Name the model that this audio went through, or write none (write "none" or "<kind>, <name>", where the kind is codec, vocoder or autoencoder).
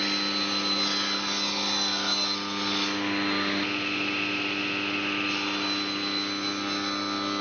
none